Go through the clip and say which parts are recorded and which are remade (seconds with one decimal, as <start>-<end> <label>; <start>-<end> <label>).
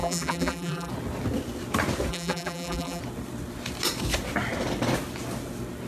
0.0-0.9 remade; 0.9-2.1 recorded; 2.1-3.0 remade; 3.0-5.9 recorded